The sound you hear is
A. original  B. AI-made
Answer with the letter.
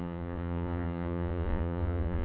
B